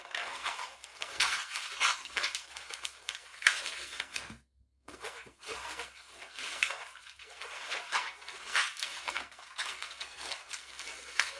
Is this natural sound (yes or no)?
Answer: no